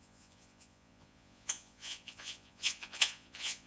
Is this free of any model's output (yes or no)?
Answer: no